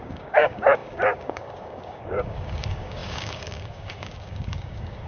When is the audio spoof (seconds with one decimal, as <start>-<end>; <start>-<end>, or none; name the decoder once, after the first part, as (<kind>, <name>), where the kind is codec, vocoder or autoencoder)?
0.0-5.1 (codec, DAC)